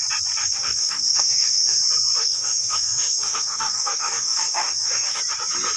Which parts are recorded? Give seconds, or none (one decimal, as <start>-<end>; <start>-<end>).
0.0-0.4; 1.8-2.2; 5.2-5.8